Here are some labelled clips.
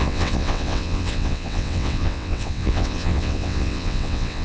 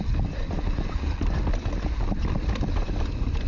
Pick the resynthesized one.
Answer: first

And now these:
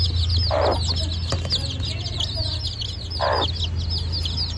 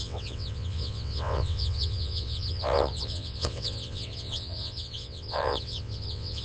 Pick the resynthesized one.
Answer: second